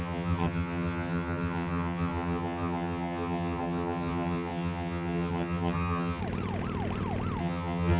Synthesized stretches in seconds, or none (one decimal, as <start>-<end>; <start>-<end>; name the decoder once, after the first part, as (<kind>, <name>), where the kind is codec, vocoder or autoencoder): 0.0-6.2 (vocoder, HiFi-GAN); 7.4-8.0